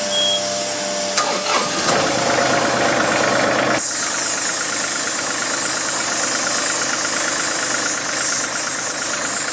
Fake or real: real